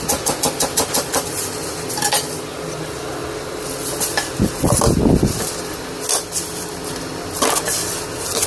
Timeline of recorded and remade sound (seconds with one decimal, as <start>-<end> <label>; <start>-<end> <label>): 0.0-8.5 recorded